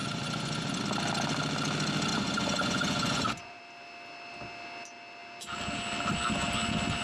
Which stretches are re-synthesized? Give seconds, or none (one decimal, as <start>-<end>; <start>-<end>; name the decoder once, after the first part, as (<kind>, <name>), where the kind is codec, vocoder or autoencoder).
0.0-0.8 (vocoder, Vocos); 2.1-3.6